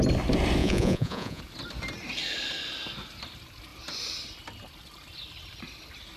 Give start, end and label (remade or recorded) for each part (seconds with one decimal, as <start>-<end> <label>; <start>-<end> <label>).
0.0-0.6 recorded; 0.6-1.4 remade; 1.4-6.2 recorded